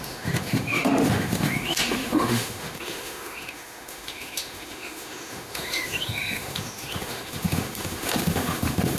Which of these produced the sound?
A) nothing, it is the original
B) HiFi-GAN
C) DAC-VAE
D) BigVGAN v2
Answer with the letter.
C